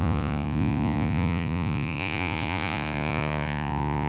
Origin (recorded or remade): remade